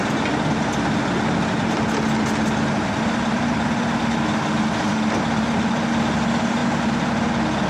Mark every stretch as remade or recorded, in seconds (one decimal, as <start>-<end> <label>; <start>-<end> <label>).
0.0-7.7 recorded